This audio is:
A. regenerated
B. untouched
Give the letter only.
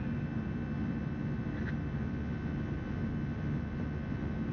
B